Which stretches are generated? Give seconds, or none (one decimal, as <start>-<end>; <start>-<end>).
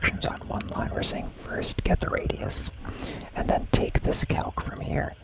0.0-1.0; 2.0-2.8; 4.2-5.2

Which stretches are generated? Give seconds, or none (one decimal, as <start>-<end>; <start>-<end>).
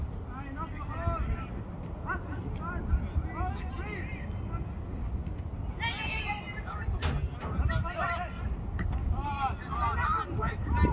none